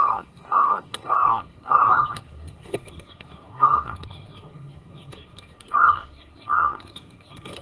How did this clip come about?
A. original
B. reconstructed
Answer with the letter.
B